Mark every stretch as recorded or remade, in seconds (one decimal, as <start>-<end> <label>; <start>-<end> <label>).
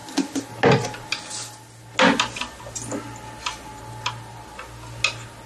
0.0-5.5 recorded